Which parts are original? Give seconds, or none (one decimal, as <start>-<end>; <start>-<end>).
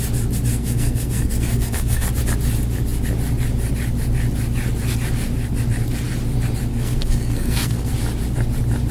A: 0.0-0.5; 2.1-6.7; 7.9-8.9